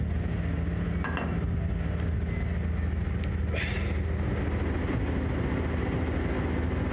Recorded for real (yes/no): yes